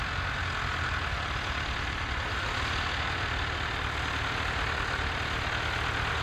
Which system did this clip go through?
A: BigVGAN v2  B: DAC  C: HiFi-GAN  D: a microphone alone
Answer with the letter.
D